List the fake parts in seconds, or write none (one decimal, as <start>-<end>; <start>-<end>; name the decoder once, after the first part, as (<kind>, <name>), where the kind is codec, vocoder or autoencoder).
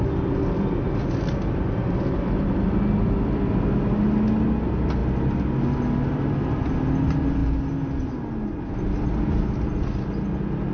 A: none